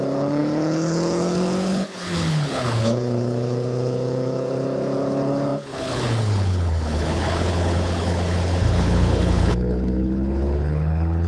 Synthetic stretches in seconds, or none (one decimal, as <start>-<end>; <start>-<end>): 0.0-11.3